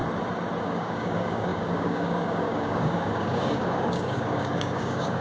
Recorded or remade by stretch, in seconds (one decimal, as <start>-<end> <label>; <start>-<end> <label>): 0.0-0.6 recorded; 0.6-5.2 remade